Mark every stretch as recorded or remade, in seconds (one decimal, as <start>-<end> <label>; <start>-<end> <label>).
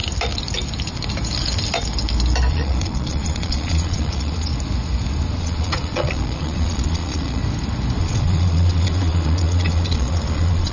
0.0-2.5 recorded; 2.5-4.5 remade; 4.5-5.4 recorded; 5.4-7.4 remade; 7.4-8.0 recorded; 8.0-10.7 remade